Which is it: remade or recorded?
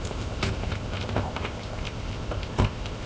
remade